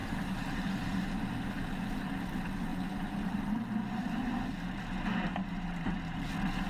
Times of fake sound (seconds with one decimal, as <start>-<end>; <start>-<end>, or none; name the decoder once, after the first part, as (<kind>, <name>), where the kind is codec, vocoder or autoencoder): 0.0-1.6 (vocoder, BigVGAN v2); 2.7-3.6; 5.4-6.0